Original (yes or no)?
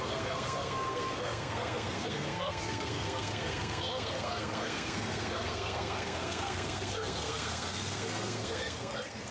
no